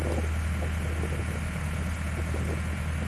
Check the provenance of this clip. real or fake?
real